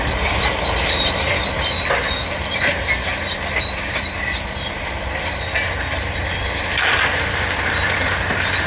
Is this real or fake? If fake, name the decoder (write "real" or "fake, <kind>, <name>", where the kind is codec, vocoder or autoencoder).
real